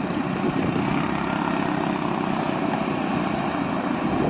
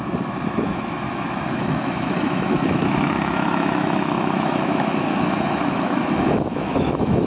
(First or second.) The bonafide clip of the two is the first